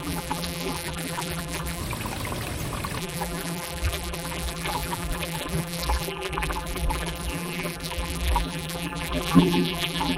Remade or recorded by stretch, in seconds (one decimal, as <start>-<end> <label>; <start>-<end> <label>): 0.0-1.8 remade; 1.8-3.0 recorded; 3.0-10.2 remade